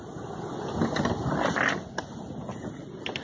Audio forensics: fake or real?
real